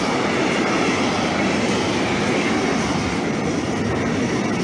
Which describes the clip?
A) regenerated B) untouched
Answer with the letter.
B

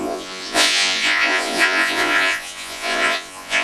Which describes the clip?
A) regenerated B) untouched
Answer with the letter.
A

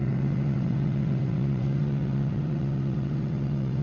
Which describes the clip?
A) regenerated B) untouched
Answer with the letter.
A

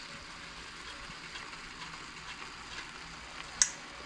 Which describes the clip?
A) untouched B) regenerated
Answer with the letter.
A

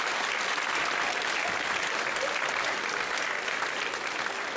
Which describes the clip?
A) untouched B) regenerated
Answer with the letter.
A